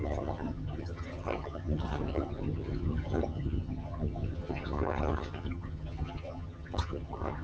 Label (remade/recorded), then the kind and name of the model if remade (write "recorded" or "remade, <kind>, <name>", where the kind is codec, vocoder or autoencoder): remade, vocoder, HiFi-GAN